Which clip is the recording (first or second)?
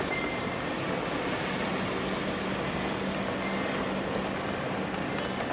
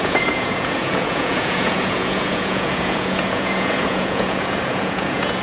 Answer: first